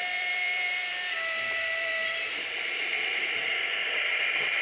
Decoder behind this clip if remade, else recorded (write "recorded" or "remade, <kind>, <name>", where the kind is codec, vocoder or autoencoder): remade, vocoder, BigVGAN v2